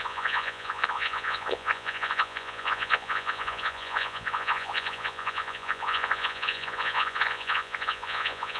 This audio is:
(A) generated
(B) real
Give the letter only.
A